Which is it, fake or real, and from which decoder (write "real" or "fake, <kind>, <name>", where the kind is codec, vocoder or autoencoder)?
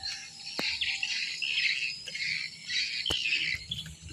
real